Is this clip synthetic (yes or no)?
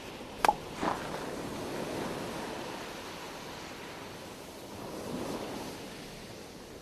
no